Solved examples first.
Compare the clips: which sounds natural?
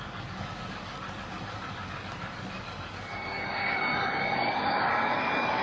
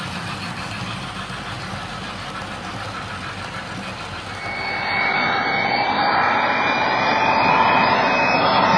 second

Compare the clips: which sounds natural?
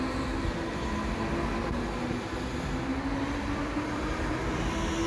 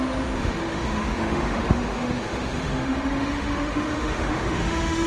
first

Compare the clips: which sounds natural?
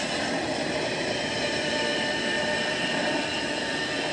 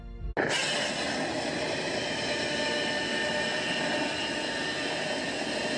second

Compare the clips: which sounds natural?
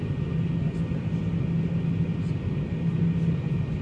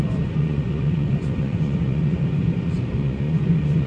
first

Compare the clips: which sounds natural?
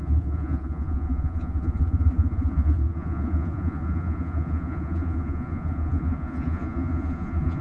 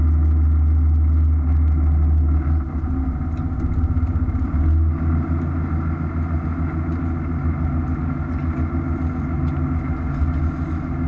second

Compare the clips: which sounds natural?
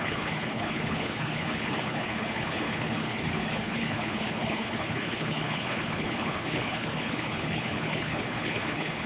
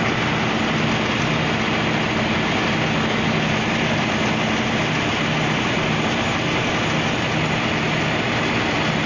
second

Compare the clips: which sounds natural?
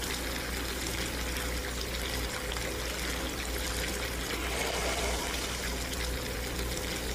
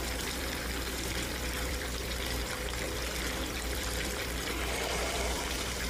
first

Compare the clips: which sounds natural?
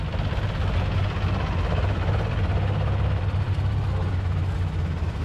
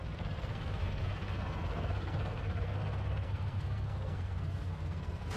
first